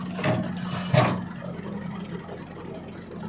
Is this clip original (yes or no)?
yes